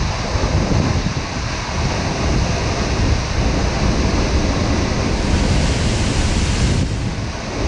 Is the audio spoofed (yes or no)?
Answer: no